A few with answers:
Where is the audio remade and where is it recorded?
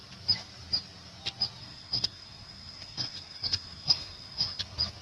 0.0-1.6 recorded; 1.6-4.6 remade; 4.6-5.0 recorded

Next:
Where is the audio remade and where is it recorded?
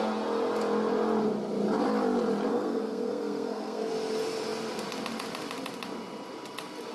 0.0-2.5 recorded; 2.5-3.9 remade; 3.9-6.9 recorded